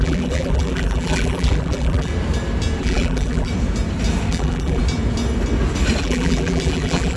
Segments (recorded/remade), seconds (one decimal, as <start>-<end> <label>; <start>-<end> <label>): 0.0-2.1 remade; 2.1-2.8 recorded; 2.8-3.5 remade; 3.5-4.3 recorded; 4.3-4.8 remade; 4.8-6.0 recorded; 6.0-7.2 remade